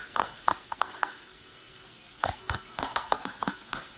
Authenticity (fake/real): fake